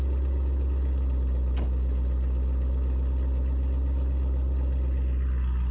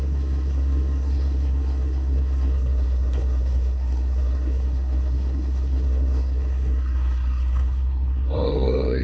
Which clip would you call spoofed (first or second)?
second